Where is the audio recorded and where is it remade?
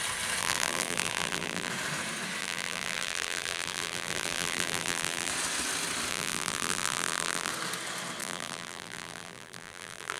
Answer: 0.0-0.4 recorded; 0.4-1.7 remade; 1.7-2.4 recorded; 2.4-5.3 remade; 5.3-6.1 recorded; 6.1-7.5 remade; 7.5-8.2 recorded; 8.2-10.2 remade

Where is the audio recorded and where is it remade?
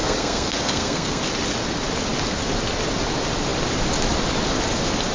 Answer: 0.0-1.2 remade; 1.2-5.1 recorded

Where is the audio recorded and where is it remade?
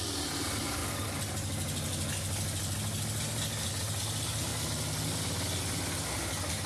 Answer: 0.0-6.7 recorded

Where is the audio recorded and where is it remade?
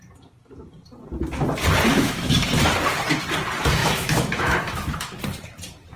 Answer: 0.0-1.9 recorded; 1.9-2.5 remade; 2.5-3.8 recorded; 3.8-5.2 remade; 5.2-6.0 recorded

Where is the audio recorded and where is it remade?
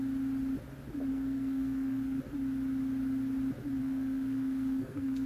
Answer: 0.0-1.1 recorded; 1.1-2.2 remade; 2.2-3.8 recorded; 3.8-5.3 remade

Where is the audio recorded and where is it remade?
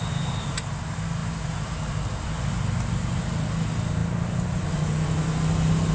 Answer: 0.0-5.9 recorded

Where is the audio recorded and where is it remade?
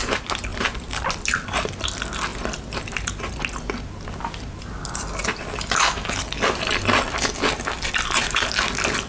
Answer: 0.0-0.5 recorded; 0.5-1.1 remade; 1.1-2.3 recorded; 2.3-3.3 remade; 3.3-9.1 recorded